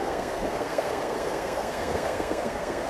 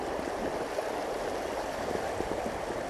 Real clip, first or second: second